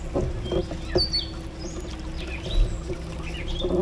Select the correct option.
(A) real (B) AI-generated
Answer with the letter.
A